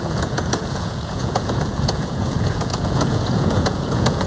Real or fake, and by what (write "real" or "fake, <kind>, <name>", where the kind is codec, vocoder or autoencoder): fake, vocoder, Vocos